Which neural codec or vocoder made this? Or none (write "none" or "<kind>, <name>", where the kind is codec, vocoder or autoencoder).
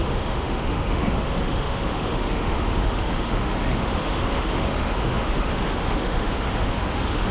autoencoder, DAC-VAE